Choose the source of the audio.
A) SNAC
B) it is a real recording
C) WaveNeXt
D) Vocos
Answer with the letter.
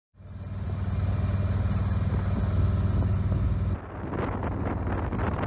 B